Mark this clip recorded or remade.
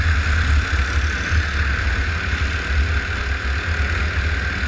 recorded